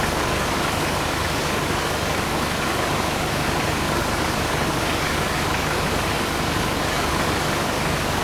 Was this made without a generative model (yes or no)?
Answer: no